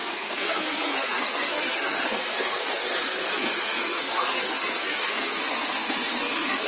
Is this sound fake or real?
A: fake